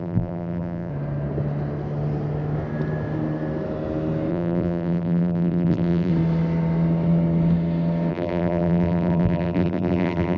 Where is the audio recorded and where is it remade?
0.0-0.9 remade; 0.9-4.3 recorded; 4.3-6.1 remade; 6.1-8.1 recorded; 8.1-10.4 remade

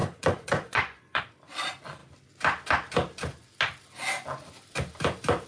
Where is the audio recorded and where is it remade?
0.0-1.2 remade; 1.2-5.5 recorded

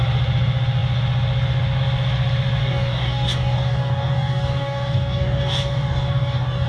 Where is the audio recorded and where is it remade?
0.0-2.6 recorded; 2.6-6.7 remade

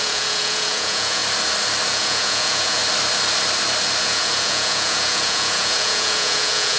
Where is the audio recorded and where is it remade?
0.0-1.2 remade; 1.2-1.9 recorded; 1.9-2.8 remade; 2.8-4.0 recorded; 4.0-6.8 remade

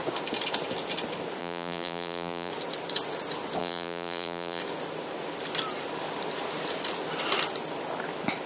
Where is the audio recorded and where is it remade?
0.0-1.4 recorded; 1.4-2.5 remade; 2.5-3.6 recorded; 3.6-4.6 remade; 4.6-8.5 recorded

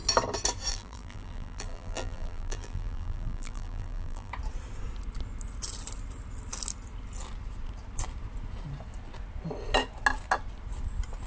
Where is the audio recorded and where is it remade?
0.0-0.7 recorded; 0.7-4.3 remade; 4.3-11.3 recorded

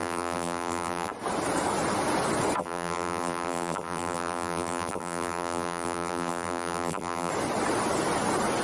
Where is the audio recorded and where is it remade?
0.0-1.1 remade; 1.1-2.6 recorded; 2.6-7.3 remade; 7.3-8.6 recorded

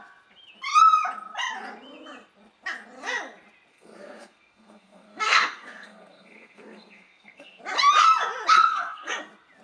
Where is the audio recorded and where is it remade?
0.0-3.7 recorded; 3.7-7.6 remade; 7.6-8.6 recorded; 8.6-9.2 remade; 9.2-9.6 recorded